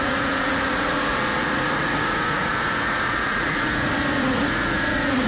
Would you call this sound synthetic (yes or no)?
yes